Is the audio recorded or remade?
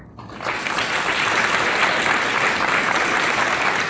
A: recorded